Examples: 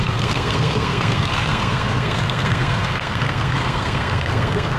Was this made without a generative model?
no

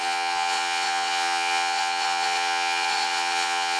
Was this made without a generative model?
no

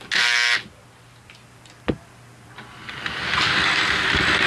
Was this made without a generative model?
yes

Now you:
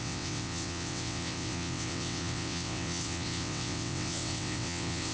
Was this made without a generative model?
no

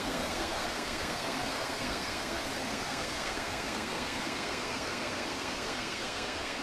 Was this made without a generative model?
no